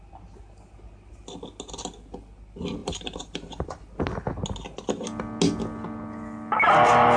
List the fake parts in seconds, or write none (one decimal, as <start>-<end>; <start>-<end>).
2.8-3.8